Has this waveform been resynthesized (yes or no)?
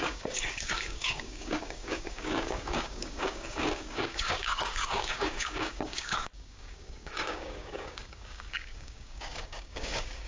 yes